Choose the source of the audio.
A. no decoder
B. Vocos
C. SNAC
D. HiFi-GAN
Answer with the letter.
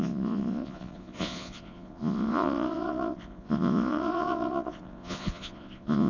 B